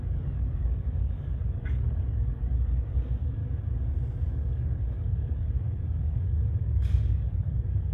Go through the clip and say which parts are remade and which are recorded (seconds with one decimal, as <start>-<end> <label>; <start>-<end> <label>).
0.0-3.4 remade; 3.4-4.3 recorded; 4.3-7.9 remade